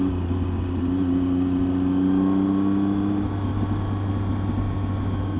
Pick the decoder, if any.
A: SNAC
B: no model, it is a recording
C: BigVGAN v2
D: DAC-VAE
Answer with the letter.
B